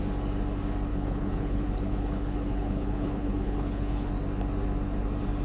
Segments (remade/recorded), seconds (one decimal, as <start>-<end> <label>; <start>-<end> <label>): 0.0-0.9 recorded; 0.9-4.1 remade; 4.1-5.4 recorded